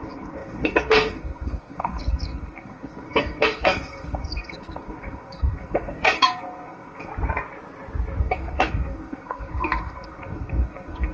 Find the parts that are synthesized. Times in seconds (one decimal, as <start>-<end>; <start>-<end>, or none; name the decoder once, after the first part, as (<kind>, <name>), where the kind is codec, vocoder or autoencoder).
0.0-7.1 (codec, SNAC); 8.2-11.1